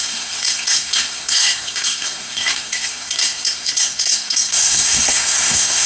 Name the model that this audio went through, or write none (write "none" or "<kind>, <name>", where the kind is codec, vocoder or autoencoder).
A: codec, SNAC